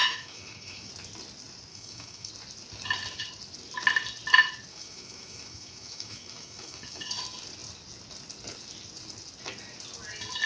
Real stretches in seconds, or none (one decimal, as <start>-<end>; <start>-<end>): 0.9-1.7; 2.3-4.7; 7.1-10.5